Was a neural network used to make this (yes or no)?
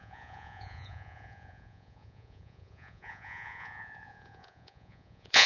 yes